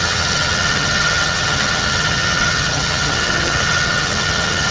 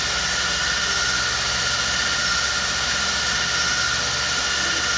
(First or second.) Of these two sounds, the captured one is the second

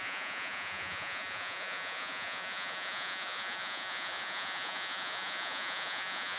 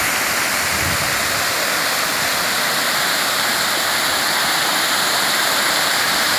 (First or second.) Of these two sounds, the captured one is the second